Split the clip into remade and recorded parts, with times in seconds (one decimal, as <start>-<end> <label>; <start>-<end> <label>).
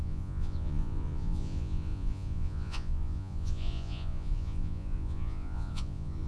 0.0-6.3 remade